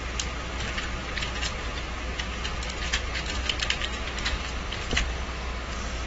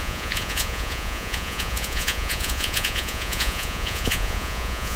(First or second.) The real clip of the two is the first